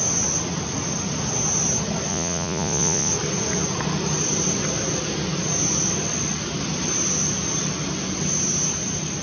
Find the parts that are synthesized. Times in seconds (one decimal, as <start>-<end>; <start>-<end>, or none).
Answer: 2.1-3.1